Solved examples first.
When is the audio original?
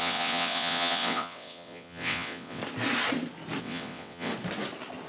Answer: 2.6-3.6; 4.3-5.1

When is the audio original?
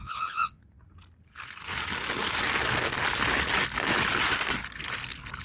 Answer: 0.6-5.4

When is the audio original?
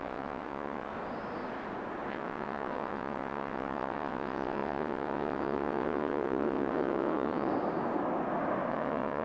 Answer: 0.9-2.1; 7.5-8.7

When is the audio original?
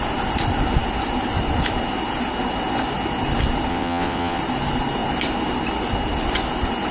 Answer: 0.0-3.7; 4.4-6.9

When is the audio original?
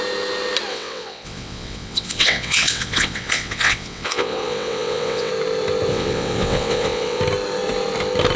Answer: 0.0-0.7; 5.3-5.9; 7.2-8.4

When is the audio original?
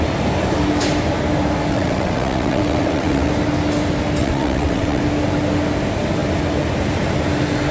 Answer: 0.0-1.7; 3.3-4.2; 5.0-7.7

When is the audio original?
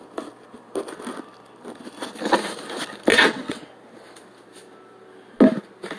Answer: 0.0-3.1; 3.7-6.0